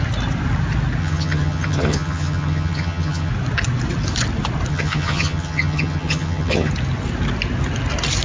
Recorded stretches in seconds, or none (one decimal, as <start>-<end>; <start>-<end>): 0.0-1.0; 3.3-4.7; 6.7-8.2